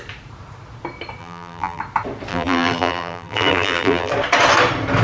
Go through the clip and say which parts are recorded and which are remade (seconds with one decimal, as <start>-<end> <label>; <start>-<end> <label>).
0.0-1.2 recorded; 1.2-1.8 remade; 1.8-2.3 recorded; 2.3-4.1 remade; 4.1-5.0 recorded